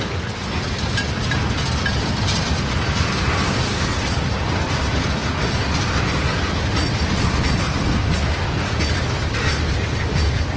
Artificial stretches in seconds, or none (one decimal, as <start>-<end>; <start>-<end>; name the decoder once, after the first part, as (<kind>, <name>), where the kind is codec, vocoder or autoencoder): none